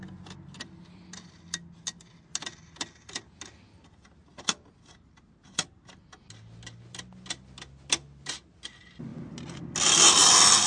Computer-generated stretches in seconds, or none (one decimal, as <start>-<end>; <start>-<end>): none